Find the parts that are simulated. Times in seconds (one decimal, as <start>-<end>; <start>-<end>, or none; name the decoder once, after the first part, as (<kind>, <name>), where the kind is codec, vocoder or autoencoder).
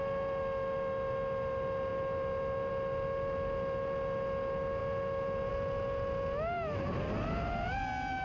none